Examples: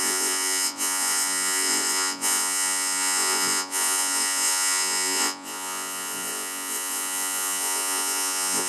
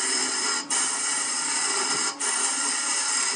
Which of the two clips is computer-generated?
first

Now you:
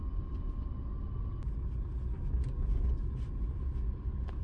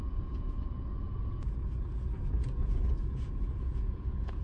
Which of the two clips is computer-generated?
second